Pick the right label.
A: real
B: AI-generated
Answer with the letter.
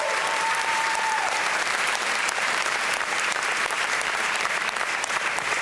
B